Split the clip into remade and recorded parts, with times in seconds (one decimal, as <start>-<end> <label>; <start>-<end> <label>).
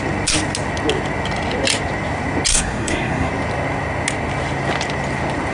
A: 0.0-2.5 recorded; 2.5-3.3 remade; 3.3-5.5 recorded